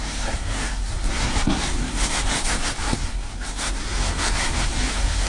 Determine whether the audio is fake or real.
fake